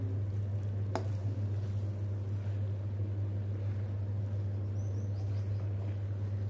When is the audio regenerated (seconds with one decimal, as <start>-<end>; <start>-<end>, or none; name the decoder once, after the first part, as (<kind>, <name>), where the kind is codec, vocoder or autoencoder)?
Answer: none